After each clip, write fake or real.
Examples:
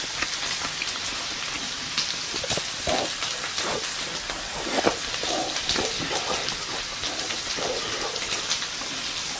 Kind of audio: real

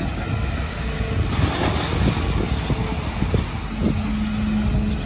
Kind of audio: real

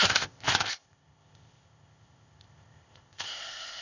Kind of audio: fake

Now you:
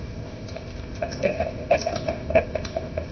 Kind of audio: fake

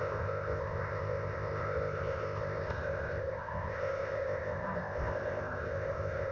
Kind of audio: fake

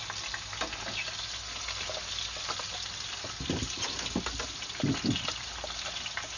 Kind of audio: real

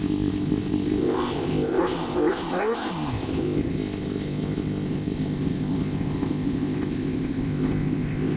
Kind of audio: fake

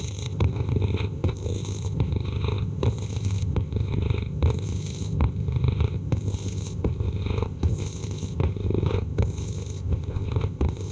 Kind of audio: fake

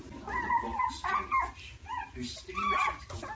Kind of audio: real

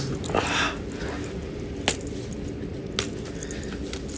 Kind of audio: real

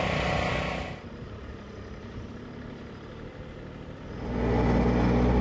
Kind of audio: real